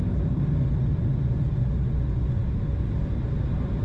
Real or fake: real